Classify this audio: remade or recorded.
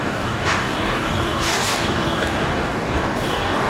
remade